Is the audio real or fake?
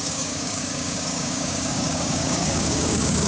fake